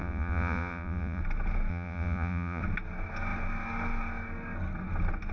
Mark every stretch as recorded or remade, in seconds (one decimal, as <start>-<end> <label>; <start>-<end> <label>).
0.0-1.2 remade; 1.2-1.7 recorded; 1.7-2.6 remade; 2.6-5.3 recorded